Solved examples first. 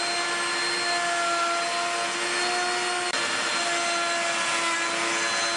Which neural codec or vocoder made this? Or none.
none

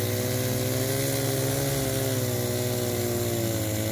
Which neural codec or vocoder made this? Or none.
none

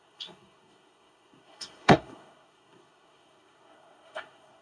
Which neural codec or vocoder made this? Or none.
codec, SNAC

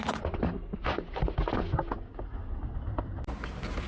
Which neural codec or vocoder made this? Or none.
none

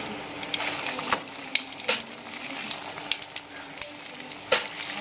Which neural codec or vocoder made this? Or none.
none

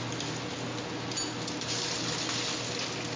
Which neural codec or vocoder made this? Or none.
none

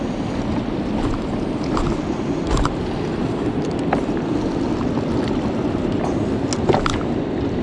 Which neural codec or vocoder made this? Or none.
none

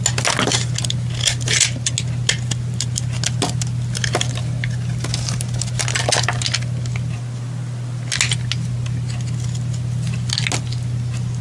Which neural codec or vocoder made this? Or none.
none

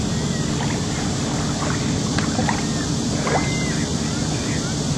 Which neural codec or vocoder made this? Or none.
none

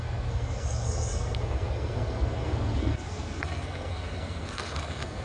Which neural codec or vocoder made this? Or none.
codec, SNAC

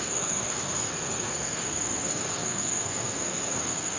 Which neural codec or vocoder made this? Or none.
codec, SNAC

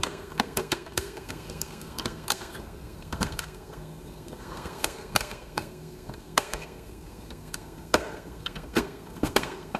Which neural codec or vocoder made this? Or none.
codec, SNAC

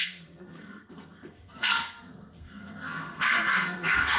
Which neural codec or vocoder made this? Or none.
codec, SNAC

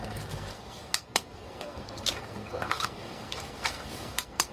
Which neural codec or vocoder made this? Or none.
codec, SNAC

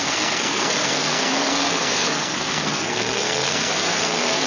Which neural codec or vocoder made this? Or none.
codec, SNAC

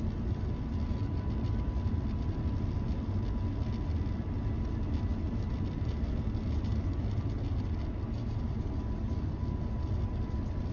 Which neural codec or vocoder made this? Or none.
none